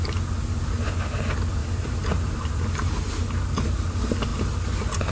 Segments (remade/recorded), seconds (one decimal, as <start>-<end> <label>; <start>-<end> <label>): 0.0-1.6 recorded; 1.6-3.1 remade; 3.1-5.1 recorded